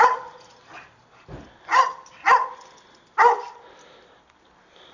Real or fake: real